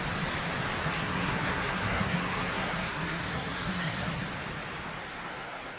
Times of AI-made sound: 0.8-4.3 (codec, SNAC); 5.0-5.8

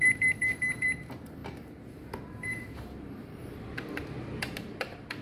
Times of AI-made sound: 0.0-1.4 (vocoder, BigVGAN v2); 2.3-3.4; 4.0-5.2

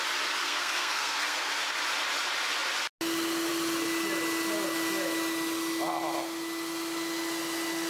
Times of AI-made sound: 0.4-1.5 (codec, SNAC)